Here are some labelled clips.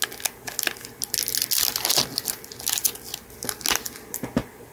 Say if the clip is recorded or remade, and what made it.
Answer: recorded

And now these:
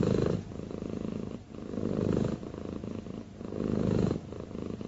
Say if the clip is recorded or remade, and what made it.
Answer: recorded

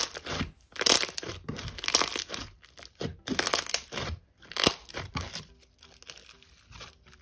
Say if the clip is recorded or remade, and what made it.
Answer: recorded